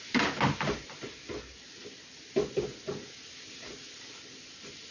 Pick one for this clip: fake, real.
real